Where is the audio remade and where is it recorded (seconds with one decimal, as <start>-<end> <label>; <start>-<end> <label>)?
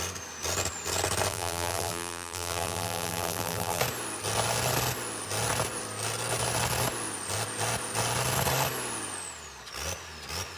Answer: 0.0-1.3 recorded; 1.3-3.8 remade; 3.8-10.6 recorded